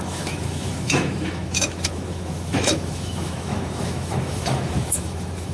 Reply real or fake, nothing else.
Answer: fake